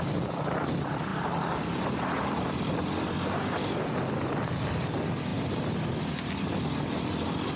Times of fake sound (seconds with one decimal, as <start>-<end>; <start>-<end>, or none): none